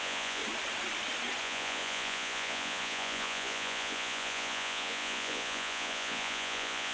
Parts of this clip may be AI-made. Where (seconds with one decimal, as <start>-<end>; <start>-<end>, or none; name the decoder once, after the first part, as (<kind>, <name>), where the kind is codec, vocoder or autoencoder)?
0.0-0.4 (vocoder, Vocos); 1.4-6.9